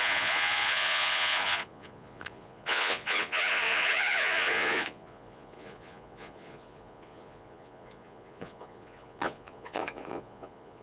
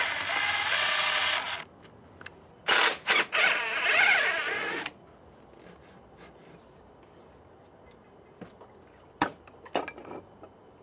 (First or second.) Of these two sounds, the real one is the second